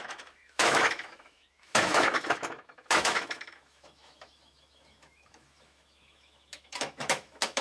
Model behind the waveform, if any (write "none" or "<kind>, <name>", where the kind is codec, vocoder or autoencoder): autoencoder, DAC-VAE